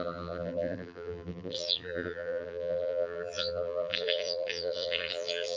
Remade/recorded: remade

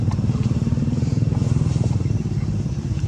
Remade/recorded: remade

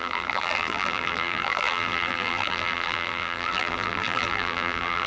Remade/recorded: remade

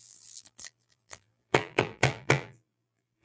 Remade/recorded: remade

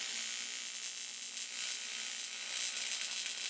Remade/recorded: recorded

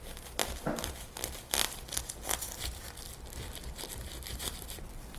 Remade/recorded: remade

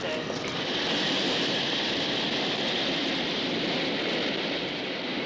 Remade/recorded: recorded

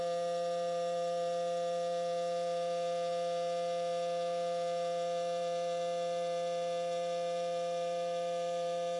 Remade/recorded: remade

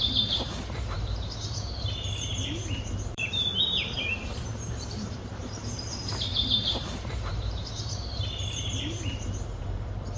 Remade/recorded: remade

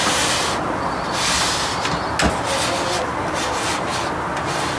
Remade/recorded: recorded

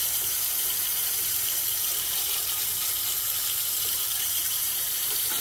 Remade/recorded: remade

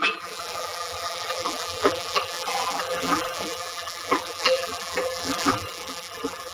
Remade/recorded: remade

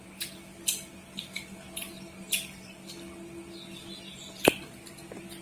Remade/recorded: recorded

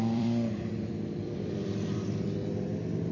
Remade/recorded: remade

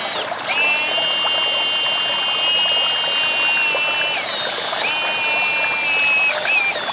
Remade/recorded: recorded